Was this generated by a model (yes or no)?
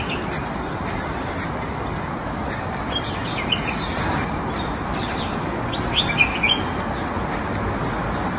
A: no